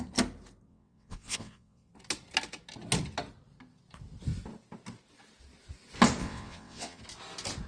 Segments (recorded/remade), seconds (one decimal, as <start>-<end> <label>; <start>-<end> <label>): 0.0-0.7 recorded; 0.7-1.9 remade; 1.9-6.2 recorded; 6.2-7.0 remade; 7.0-7.7 recorded